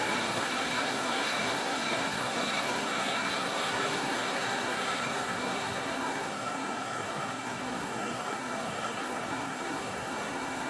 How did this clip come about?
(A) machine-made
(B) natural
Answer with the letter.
A